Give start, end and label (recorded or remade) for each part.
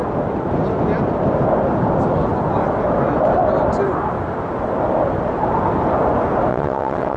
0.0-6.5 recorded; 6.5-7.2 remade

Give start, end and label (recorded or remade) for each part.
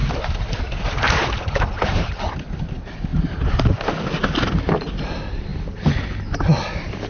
0.0-7.1 recorded